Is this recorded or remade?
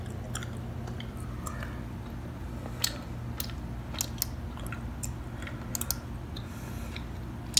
recorded